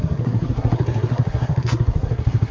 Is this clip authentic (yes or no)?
no